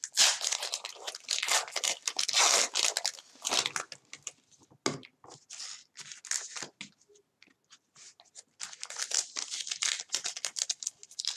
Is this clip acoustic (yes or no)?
yes